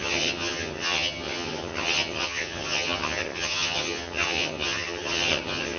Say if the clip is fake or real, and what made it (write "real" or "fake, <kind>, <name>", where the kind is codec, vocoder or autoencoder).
fake, vocoder, HiFi-GAN